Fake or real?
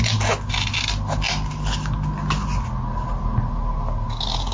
real